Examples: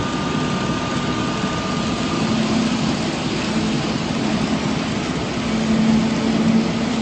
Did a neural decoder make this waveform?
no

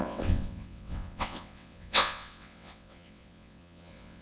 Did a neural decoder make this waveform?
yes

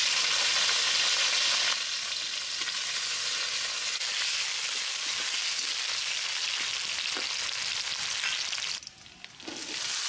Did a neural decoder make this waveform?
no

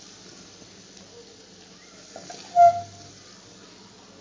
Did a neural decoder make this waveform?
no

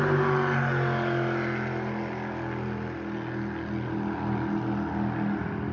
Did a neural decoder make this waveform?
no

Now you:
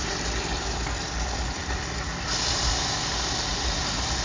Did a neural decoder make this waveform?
no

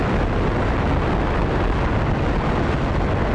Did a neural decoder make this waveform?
no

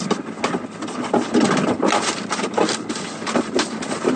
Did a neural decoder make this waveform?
no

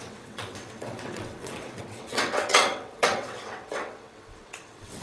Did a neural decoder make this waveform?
yes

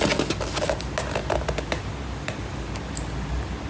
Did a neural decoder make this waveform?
no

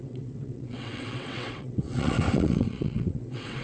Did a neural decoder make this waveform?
yes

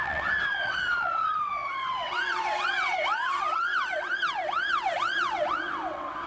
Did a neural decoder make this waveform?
yes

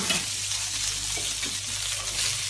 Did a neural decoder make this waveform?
no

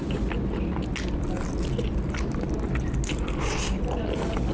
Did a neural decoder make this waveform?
no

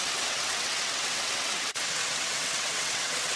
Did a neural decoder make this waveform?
yes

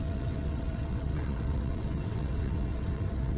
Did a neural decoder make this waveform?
yes